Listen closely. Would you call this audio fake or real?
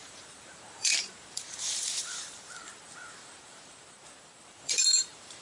fake